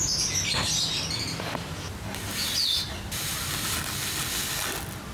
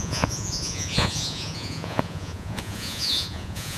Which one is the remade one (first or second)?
second